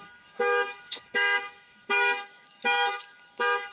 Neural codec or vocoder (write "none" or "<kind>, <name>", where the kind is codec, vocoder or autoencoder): autoencoder, DAC-VAE